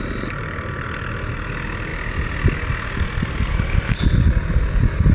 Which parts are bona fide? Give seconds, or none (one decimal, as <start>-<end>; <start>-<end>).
0.0-5.1